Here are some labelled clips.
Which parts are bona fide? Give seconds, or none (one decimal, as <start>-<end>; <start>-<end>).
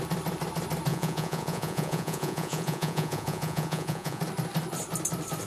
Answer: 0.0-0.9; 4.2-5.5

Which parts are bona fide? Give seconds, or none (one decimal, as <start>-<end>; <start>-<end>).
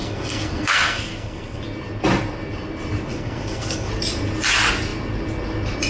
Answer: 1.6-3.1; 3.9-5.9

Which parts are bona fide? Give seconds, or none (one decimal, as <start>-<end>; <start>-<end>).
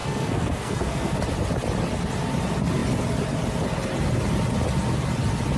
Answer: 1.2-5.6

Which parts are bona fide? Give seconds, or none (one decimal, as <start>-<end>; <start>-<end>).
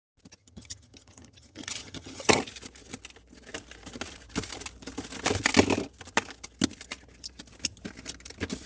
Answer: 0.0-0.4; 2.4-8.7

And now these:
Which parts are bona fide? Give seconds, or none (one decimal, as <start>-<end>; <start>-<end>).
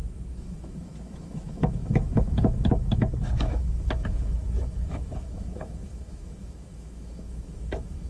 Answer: none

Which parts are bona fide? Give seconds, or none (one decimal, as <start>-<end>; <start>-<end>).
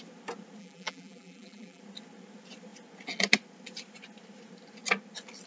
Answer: 0.0-0.6; 1.8-5.5